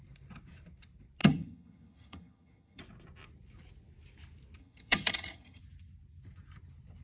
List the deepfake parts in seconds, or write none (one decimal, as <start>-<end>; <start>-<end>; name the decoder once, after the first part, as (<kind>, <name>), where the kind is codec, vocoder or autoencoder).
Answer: 1.2-2.8 (vocoder, HiFi-GAN); 4.6-5.6